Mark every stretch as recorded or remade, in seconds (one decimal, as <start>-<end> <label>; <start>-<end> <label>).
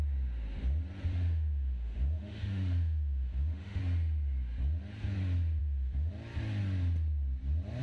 0.0-1.1 recorded; 1.1-3.8 remade; 3.8-5.6 recorded; 5.6-6.1 remade; 6.1-7.8 recorded